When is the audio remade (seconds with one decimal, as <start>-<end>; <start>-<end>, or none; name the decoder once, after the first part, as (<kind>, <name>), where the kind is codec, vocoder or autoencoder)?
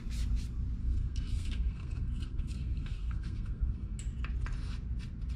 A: 0.8-4.0 (codec, SNAC)